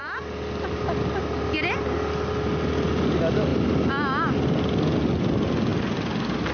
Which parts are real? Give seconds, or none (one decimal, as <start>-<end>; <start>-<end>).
0.0-6.5